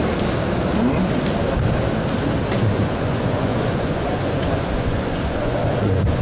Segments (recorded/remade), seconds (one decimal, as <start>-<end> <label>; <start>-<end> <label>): 0.0-2.5 recorded; 2.5-6.2 remade